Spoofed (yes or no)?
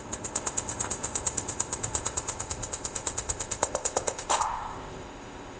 yes